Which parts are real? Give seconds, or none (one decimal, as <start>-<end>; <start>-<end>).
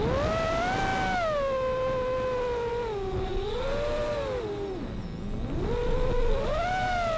0.0-7.2